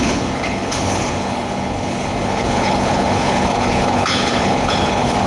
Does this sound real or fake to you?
fake